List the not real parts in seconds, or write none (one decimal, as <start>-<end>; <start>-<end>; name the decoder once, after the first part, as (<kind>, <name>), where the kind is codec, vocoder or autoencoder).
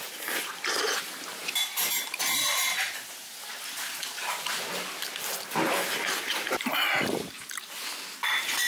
none